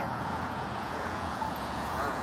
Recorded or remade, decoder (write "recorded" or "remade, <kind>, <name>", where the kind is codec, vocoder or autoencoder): remade, vocoder, Vocos